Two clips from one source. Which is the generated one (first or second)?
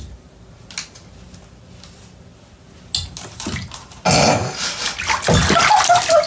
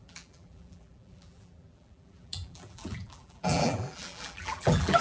second